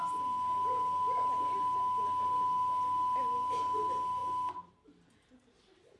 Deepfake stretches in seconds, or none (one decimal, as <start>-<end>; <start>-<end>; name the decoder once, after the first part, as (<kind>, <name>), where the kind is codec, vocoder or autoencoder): none